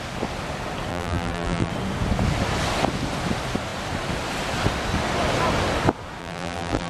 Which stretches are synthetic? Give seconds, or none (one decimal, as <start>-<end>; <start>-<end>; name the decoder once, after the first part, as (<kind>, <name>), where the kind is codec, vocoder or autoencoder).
0.9-1.7 (vocoder, BigVGAN v2); 6.2-6.9